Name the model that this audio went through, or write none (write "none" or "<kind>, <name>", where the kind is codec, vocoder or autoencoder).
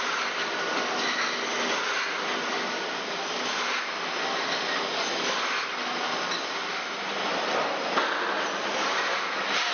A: none